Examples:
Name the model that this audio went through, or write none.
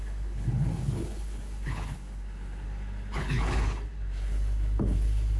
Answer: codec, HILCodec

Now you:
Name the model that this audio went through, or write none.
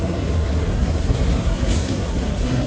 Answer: codec, SNAC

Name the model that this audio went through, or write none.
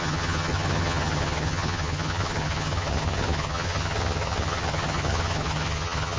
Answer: vocoder, HiFi-GAN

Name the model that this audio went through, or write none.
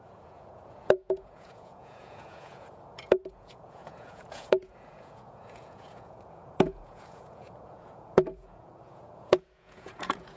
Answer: vocoder, Vocos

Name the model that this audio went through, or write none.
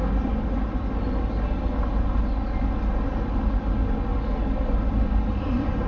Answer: none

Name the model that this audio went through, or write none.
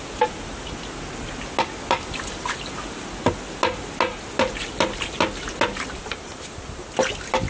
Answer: none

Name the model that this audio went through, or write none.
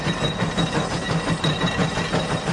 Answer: none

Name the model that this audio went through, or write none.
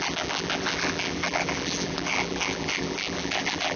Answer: vocoder, BigVGAN v2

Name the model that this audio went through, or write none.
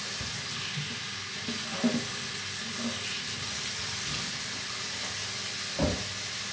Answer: none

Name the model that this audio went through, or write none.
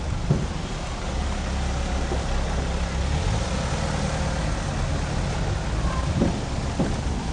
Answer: none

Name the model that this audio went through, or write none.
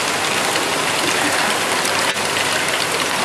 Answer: none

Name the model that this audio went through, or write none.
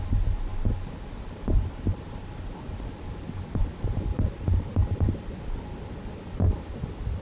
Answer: none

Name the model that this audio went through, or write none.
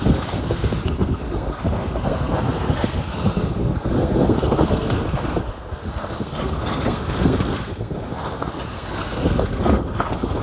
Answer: codec, SNAC